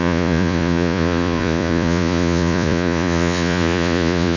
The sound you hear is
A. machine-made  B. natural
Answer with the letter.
A